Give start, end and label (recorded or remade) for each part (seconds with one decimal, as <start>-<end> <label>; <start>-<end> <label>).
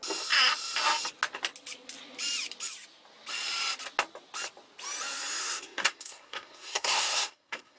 0.0-5.4 recorded; 5.4-7.8 remade